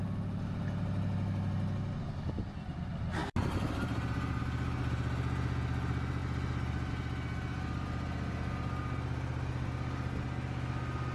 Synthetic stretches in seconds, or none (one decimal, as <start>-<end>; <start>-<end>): 3.2-4.4